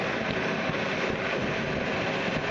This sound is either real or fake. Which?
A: real